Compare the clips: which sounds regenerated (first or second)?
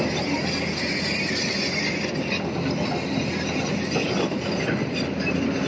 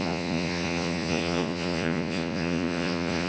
second